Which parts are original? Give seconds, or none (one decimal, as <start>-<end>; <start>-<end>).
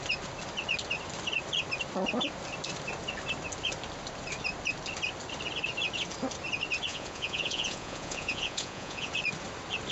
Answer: 0.0-6.9; 9.1-9.9